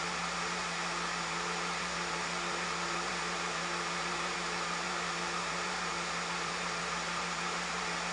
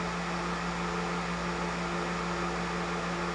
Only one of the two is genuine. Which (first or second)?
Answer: second